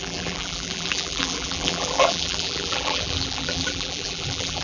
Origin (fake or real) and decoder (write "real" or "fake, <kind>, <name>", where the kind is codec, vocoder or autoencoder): fake, vocoder, BigVGAN v2